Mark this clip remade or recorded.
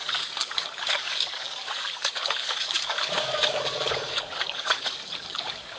remade